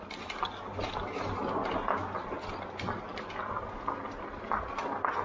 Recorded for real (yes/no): yes